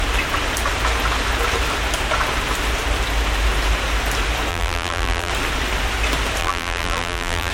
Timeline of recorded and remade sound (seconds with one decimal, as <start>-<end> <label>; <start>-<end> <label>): 0.0-4.5 recorded; 4.5-5.3 remade; 5.3-6.4 recorded; 6.4-7.5 remade